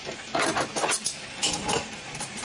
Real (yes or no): yes